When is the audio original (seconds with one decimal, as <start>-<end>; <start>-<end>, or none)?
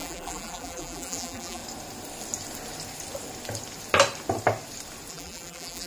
1.6-5.1